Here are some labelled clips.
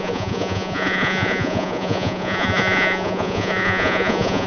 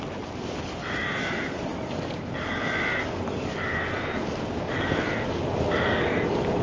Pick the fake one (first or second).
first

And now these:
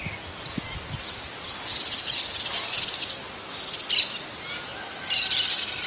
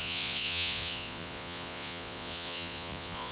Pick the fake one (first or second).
second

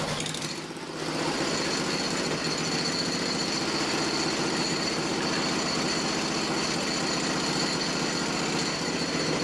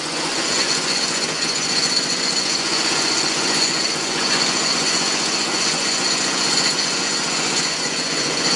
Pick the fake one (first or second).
second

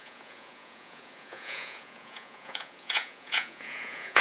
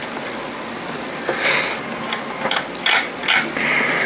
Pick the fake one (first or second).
first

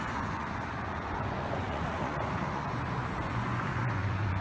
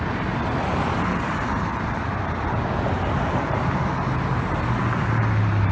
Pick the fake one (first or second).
first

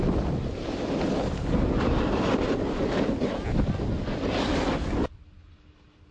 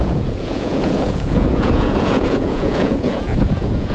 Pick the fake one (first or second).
second